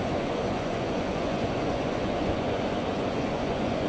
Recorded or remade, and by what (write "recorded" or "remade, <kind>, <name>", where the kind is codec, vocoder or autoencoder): remade, vocoder, Vocos